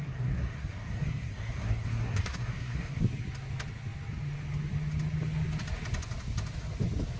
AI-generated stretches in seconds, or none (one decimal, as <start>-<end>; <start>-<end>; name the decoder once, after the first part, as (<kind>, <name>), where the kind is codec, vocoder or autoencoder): 0.0-3.0 (codec, SNAC)